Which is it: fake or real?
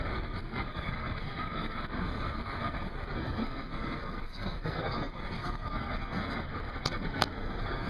fake